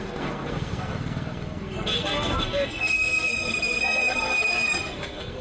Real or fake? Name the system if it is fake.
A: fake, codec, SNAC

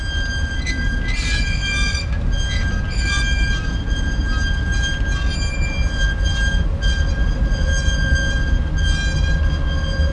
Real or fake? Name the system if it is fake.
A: real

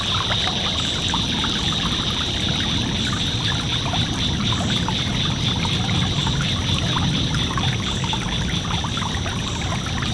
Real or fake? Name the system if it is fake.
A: real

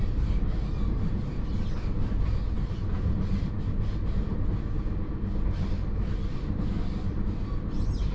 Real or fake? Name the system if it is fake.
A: real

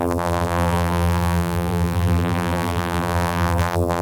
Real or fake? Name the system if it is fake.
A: fake, vocoder, BigVGAN v2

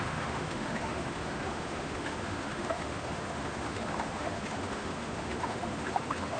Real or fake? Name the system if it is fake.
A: fake, autoencoder, DAC-VAE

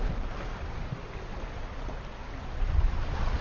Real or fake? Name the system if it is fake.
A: real